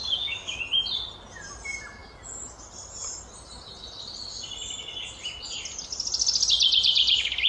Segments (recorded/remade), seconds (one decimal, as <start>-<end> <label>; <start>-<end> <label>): 0.0-0.6 remade; 0.6-7.5 recorded